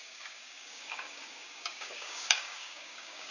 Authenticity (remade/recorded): remade